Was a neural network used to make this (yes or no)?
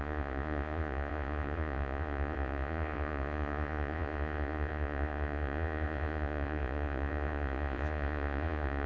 yes